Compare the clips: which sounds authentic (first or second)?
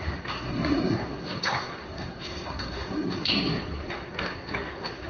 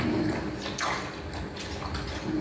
second